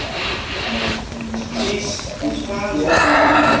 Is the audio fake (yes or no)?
no